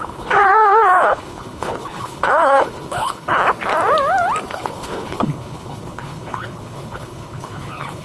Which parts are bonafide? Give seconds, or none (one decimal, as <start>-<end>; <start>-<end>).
3.4-4.5